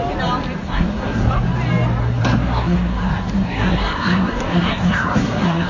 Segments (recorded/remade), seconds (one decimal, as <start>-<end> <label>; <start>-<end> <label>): 0.0-0.6 recorded; 0.6-1.3 remade; 1.3-2.0 recorded; 2.0-5.7 remade